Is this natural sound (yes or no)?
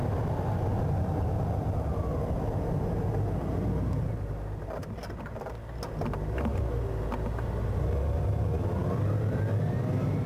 yes